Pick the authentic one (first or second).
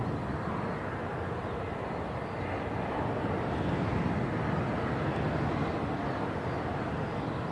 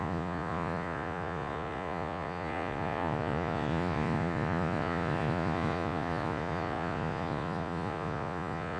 first